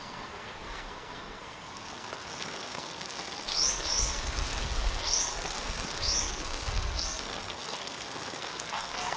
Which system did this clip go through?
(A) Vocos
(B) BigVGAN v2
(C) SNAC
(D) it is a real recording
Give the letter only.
C